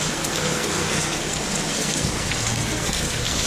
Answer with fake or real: fake